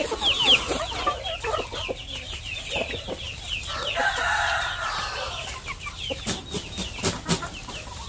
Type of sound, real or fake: real